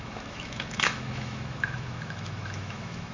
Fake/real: fake